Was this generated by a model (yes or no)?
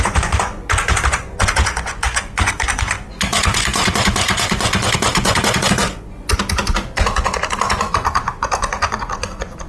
yes